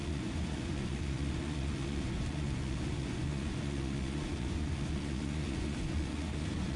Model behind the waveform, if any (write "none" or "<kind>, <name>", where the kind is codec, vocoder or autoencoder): vocoder, Vocos